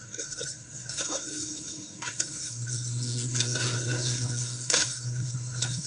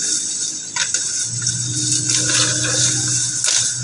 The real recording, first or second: second